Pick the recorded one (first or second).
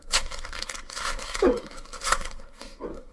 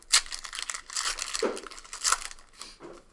second